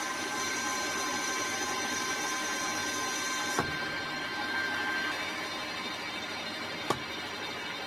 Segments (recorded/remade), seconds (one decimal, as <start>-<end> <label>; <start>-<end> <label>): 0.0-2.8 remade; 2.8-3.5 recorded; 3.5-4.3 remade; 4.3-6.1 recorded; 6.1-7.9 remade